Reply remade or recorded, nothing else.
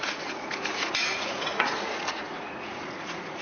remade